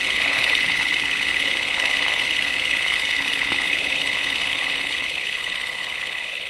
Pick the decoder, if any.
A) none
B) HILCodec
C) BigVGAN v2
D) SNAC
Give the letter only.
B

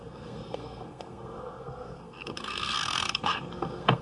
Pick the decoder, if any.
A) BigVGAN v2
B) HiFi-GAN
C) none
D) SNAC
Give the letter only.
D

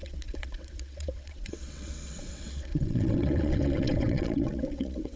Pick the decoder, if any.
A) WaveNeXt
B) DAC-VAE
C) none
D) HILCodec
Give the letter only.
A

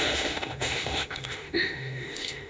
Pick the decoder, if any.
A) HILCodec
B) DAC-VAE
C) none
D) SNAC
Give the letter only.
B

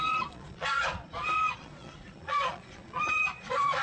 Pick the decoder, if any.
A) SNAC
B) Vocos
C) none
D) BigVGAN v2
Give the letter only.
B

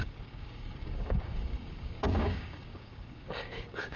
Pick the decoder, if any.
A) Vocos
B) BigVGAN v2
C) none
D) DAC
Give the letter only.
D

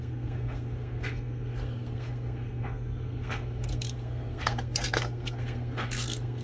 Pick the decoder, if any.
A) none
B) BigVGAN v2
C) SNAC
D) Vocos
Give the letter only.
C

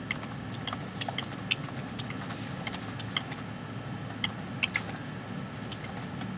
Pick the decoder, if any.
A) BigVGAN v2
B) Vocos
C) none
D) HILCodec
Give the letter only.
C